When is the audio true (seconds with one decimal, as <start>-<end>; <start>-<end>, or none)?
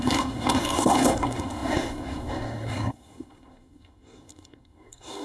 none